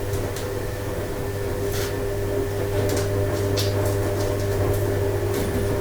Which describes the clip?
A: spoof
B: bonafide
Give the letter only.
B